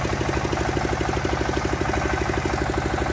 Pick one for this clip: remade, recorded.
recorded